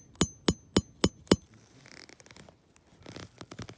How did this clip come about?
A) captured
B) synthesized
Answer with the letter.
A